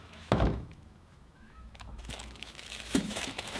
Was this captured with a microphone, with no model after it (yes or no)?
no